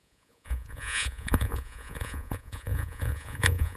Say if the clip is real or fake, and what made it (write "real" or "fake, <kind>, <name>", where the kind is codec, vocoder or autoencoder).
fake, vocoder, Vocos